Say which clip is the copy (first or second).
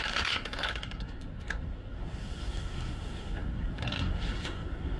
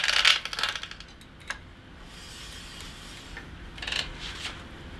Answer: first